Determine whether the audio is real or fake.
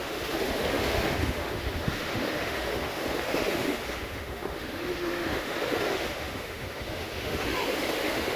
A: fake